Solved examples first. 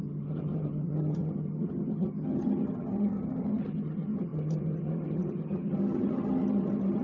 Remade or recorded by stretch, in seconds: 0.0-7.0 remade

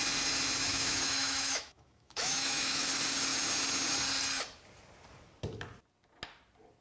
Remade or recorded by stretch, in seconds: 0.0-0.7 recorded; 0.7-2.9 remade; 2.9-6.8 recorded

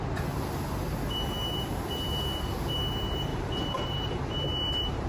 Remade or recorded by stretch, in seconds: 0.0-3.3 recorded; 3.3-5.1 remade